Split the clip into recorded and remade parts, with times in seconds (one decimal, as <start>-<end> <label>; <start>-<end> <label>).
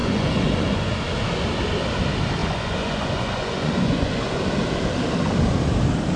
0.0-0.9 remade; 0.9-2.4 recorded; 2.4-4.4 remade; 4.4-6.2 recorded